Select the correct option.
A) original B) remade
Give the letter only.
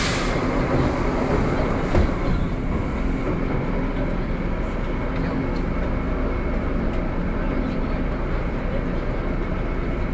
A